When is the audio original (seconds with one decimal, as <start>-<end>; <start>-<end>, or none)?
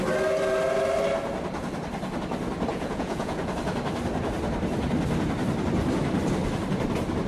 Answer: 0.0-2.7; 3.5-7.3